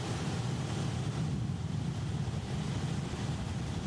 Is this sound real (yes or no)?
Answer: yes